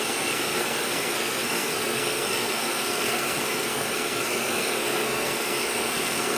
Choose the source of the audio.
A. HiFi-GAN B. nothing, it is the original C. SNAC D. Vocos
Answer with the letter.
C